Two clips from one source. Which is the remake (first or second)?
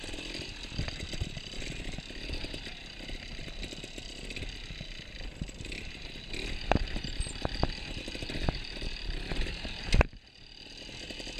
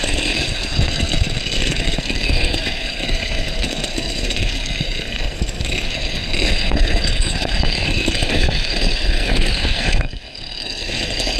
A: second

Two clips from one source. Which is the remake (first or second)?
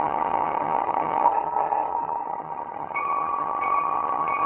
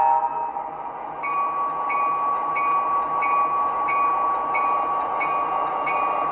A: first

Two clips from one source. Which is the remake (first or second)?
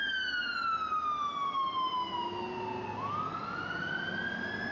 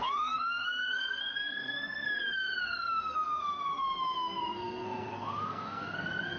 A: second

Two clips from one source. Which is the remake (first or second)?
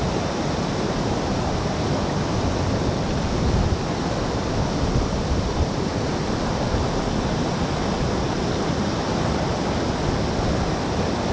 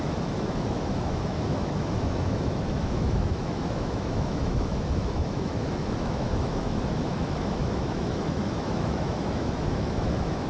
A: second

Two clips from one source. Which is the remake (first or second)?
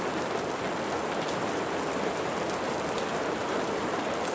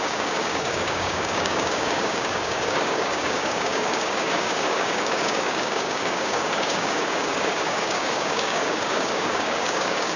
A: second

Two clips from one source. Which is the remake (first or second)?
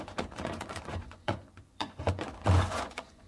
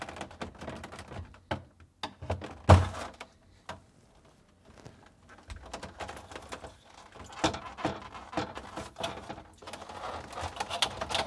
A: first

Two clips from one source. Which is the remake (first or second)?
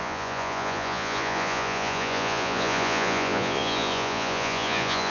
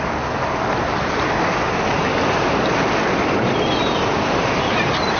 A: first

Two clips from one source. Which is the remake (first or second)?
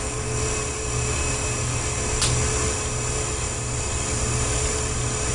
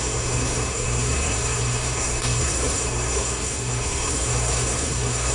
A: second